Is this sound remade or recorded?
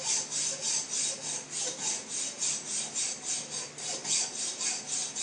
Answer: recorded